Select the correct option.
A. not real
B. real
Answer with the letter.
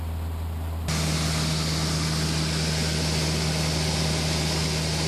B